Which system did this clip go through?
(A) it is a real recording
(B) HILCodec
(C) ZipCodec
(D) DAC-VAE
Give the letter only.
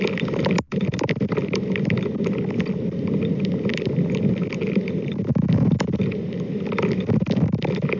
A